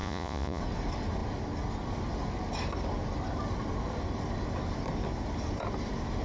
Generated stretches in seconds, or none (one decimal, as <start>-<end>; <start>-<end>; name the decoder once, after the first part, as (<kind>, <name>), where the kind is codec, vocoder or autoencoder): 0.0-0.6 (vocoder, Vocos)

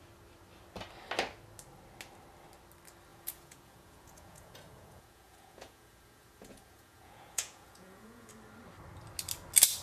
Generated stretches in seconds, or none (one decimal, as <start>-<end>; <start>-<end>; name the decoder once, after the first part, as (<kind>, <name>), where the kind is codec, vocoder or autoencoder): 3.1-8.3 (vocoder, Vocos)

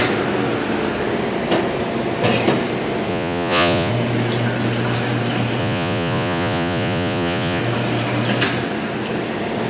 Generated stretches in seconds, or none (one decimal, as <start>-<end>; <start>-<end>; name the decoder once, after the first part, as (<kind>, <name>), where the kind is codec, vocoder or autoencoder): 3.1-3.9 (vocoder, Vocos); 5.6-7.6